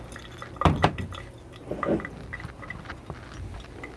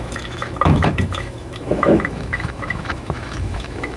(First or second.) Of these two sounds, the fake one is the second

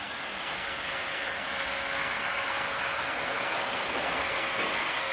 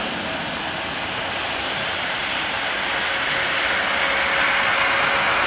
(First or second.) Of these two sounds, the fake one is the first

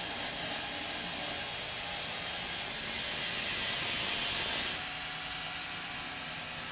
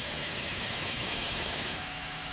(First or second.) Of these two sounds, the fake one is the second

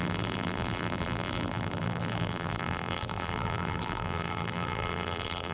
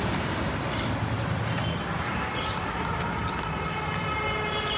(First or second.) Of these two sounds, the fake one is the first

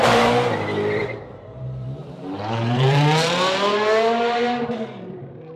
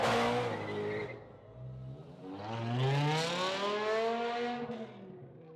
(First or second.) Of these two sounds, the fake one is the first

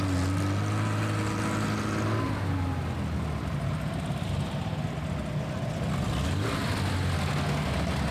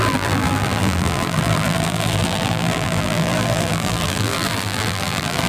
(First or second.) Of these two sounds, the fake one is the second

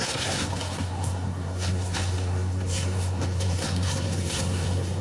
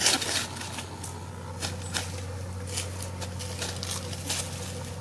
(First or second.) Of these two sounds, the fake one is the first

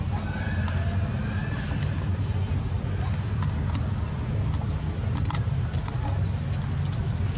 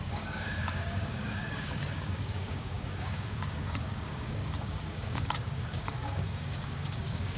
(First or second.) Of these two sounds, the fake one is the second